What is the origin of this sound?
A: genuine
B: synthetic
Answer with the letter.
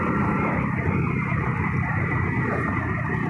A